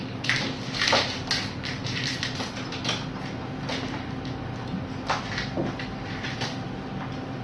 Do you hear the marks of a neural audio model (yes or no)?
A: no